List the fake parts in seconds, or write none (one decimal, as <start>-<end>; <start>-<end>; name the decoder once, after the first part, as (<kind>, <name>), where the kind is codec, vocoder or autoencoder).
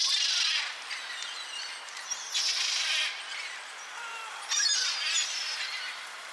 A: none